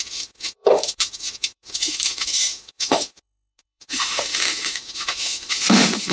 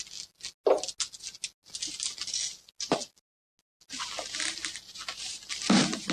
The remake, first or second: first